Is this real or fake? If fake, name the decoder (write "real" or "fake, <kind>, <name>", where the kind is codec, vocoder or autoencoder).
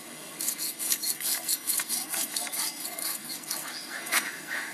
fake, codec, SNAC